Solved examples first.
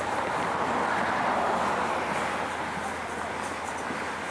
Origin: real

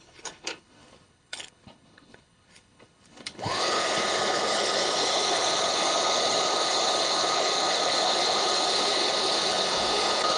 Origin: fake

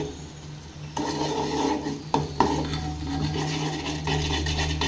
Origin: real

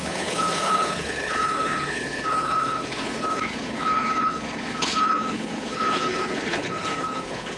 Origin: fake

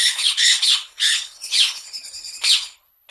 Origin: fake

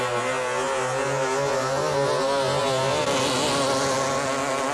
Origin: real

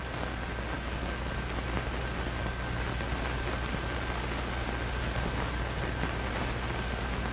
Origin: real